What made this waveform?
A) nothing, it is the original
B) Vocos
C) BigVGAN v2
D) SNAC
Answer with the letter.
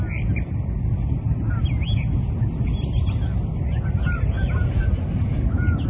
A